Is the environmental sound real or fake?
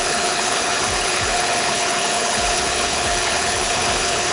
fake